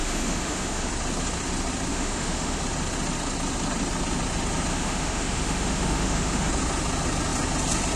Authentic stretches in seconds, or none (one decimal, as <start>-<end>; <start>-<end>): 0.9-1.9; 2.6-4.7; 6.5-8.0